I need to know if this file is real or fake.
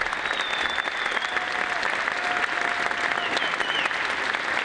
real